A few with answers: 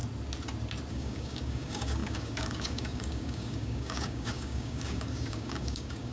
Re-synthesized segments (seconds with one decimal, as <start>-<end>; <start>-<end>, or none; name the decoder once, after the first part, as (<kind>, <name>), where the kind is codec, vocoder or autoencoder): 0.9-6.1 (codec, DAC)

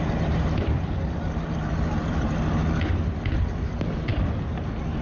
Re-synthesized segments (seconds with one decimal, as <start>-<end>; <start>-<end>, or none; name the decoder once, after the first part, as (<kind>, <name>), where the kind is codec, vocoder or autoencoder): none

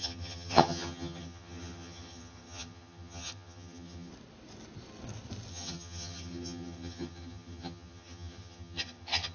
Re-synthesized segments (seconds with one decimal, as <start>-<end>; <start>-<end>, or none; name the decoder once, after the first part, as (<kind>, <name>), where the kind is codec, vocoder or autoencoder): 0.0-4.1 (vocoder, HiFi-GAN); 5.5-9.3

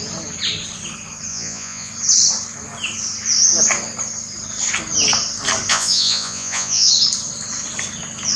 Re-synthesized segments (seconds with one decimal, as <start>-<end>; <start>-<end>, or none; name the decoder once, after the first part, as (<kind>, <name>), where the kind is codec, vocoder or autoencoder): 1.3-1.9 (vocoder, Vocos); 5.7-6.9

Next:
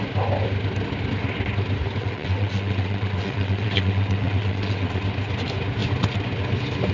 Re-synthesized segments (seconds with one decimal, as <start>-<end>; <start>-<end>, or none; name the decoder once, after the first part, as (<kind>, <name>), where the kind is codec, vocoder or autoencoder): 2.0-5.0 (vocoder, WaveNeXt)